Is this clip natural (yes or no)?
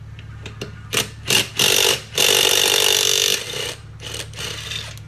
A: yes